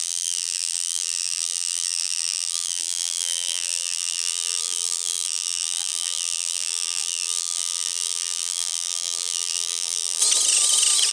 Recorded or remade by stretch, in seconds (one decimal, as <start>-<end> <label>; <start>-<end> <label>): 0.0-10.2 remade; 10.2-11.1 recorded